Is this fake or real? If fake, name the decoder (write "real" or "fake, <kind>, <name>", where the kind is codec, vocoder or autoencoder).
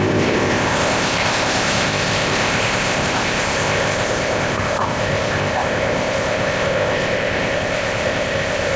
fake, codec, ZipCodec